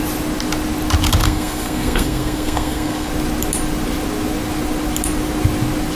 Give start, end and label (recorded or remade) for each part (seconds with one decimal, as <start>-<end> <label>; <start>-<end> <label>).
0.0-1.2 recorded; 1.2-3.1 remade; 3.1-5.9 recorded